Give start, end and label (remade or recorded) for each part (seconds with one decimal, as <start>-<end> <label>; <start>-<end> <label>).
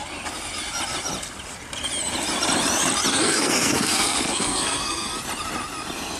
0.0-3.1 recorded; 3.1-5.2 remade; 5.2-6.2 recorded